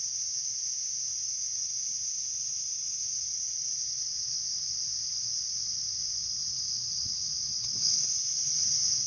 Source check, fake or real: fake